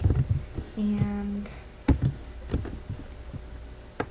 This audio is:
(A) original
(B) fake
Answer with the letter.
A